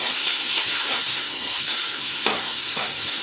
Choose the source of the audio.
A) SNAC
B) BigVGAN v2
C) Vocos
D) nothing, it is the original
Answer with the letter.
A